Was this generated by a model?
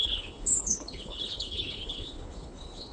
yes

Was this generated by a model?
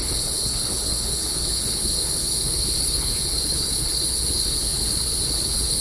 yes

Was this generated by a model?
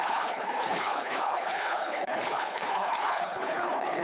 yes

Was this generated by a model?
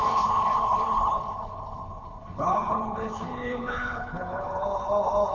yes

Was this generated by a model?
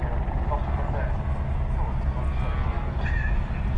no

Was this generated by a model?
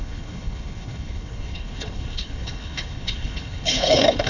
yes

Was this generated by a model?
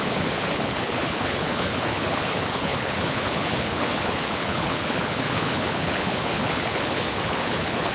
yes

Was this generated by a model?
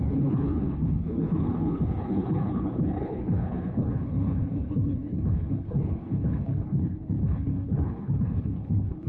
yes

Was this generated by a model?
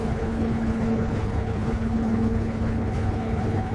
yes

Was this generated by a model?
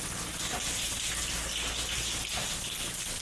no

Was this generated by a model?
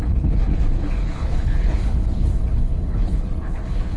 yes